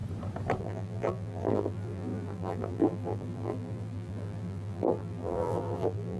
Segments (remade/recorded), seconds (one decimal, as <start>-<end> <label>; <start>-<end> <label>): 0.0-0.6 recorded; 0.6-6.2 remade